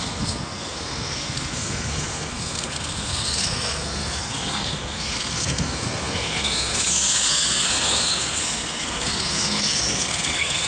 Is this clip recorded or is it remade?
remade